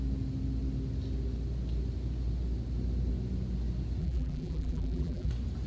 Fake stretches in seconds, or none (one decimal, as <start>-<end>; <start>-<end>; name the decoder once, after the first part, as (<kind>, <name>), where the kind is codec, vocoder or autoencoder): 4.0-5.3 (vocoder, BigVGAN v2)